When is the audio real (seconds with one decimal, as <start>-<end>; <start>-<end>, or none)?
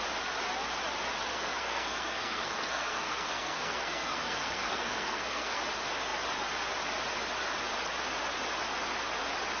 0.0-1.3; 5.6-9.6